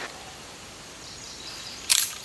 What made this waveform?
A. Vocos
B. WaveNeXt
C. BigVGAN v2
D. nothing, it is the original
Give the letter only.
C